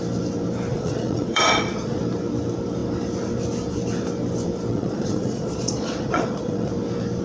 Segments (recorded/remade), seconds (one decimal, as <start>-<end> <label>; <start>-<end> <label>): 0.0-0.7 recorded; 0.7-2.0 remade; 2.0-4.7 recorded; 4.7-6.7 remade; 6.7-7.2 recorded